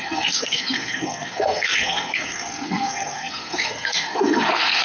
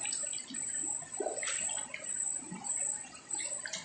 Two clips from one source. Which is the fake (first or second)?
first